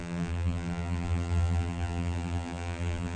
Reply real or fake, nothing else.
fake